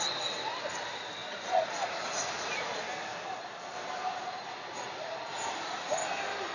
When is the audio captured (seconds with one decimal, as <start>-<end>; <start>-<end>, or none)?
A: 0.0-1.2; 2.8-4.1; 5.9-6.5

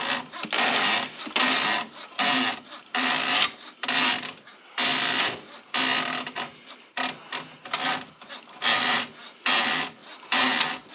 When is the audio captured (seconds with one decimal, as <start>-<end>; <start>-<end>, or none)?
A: 0.0-10.9

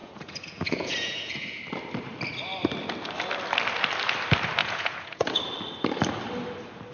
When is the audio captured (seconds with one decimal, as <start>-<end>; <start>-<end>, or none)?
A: 1.6-4.6; 5.4-6.9

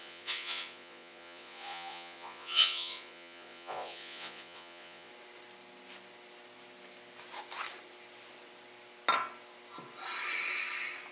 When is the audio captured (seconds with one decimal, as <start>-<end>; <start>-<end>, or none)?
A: 5.1-11.1

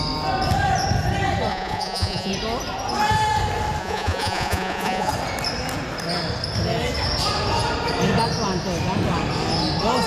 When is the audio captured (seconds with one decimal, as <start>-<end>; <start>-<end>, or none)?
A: 0.0-1.5; 2.3-3.8; 5.1-10.1

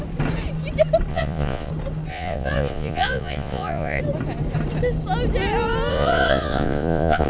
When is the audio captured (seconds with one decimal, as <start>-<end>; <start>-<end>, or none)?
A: 0.0-1.1; 1.7-2.1; 4.0-5.9